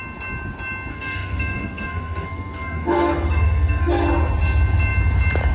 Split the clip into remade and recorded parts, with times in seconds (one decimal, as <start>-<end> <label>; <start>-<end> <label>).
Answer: 0.0-0.9 recorded; 0.9-3.9 remade; 3.9-5.5 recorded

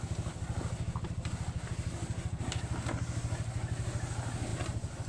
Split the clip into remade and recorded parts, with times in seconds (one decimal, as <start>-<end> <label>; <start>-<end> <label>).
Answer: 0.0-5.1 recorded